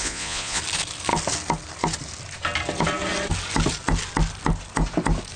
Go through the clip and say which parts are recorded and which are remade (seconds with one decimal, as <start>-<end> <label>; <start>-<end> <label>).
0.0-0.6 remade; 0.6-5.4 recorded